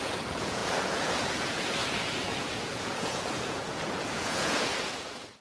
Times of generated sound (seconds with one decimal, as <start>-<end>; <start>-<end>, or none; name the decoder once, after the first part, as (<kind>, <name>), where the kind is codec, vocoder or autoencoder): 0.0-5.4 (vocoder, Vocos)